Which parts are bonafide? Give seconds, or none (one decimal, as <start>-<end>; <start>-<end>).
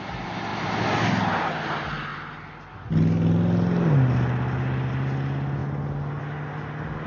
0.0-7.1